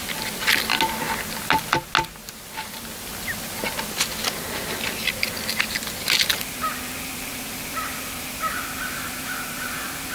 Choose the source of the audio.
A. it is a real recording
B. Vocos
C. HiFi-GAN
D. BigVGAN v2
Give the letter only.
A